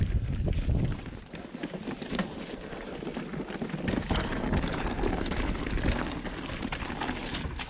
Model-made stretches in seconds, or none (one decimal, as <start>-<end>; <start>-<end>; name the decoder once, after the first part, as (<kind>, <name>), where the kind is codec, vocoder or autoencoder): none